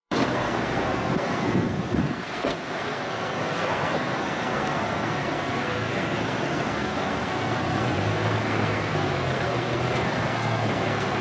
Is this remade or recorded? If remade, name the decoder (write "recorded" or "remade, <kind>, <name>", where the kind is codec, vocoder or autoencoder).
remade, codec, SNAC